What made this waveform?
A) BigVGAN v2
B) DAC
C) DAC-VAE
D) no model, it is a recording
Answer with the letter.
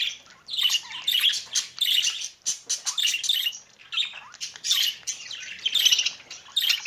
D